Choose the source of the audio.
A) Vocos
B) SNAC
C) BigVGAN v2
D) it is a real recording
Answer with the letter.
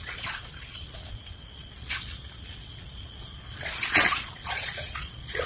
A